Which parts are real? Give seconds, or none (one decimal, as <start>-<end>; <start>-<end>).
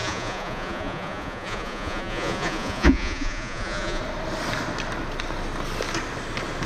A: 4.0-6.7